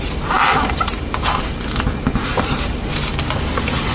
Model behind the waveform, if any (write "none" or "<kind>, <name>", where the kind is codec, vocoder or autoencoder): vocoder, BigVGAN v2